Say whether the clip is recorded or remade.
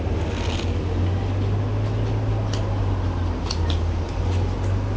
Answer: recorded